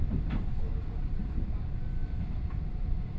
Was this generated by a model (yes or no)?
no